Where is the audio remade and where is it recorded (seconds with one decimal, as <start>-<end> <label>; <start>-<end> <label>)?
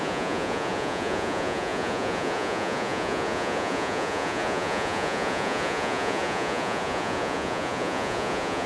0.0-8.7 remade